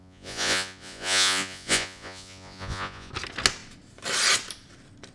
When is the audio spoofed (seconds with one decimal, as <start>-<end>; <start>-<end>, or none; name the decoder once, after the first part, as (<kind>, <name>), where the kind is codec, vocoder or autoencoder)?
0.0-3.1 (vocoder, Vocos)